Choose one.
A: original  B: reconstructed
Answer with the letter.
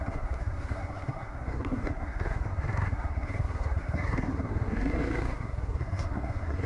B